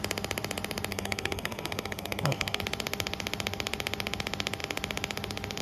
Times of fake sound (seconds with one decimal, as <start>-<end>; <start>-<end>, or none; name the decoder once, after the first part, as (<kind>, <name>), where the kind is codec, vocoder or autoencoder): 0.9-2.6 (codec, SNAC)